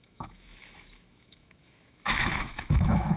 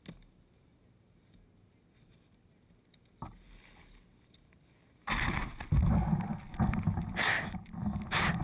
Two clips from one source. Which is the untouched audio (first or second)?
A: second